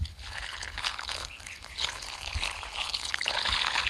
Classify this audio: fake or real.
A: fake